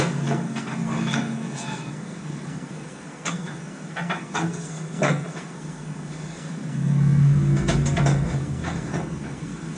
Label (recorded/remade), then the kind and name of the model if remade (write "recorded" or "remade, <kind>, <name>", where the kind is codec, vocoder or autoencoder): remade, codec, SNAC